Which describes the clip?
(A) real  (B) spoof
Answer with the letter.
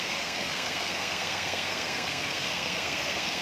B